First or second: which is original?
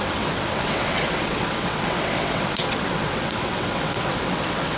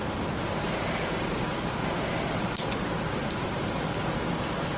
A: second